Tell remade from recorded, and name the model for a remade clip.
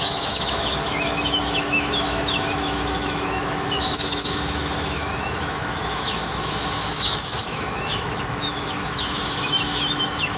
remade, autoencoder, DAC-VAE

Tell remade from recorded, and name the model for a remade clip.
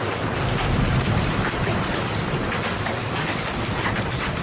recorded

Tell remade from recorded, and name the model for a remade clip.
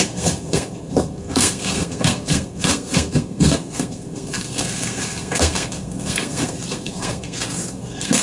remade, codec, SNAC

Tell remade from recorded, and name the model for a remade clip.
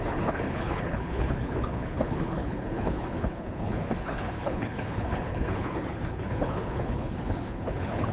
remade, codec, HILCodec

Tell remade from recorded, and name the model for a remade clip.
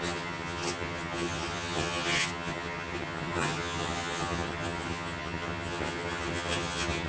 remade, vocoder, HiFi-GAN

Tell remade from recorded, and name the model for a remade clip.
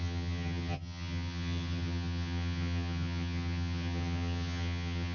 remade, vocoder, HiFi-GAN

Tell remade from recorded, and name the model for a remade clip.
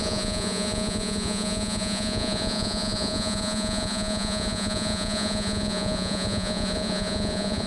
remade, vocoder, Vocos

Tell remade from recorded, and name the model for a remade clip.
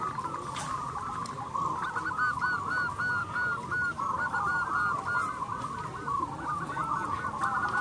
recorded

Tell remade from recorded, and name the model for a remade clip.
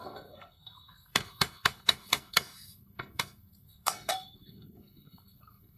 remade, codec, SNAC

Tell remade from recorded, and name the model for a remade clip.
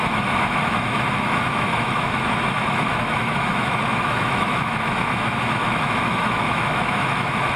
remade, autoencoder, DAC-VAE